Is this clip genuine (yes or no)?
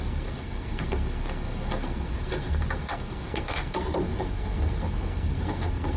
no